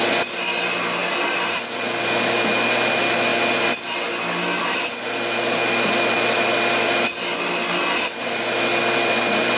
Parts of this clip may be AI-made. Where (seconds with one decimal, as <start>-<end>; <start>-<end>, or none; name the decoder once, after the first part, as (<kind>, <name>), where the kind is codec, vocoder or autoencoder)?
none